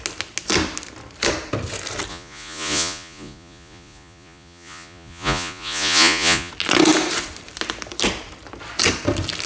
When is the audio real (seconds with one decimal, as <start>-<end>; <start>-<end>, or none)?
0.0-2.1; 6.5-9.5